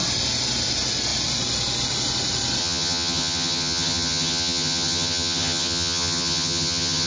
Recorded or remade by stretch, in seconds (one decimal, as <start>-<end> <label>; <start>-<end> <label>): 0.0-2.6 recorded; 2.6-7.1 remade